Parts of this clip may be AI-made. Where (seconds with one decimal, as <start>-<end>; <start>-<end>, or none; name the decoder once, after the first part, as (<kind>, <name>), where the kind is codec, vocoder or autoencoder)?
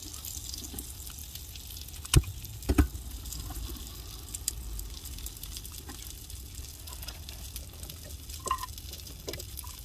none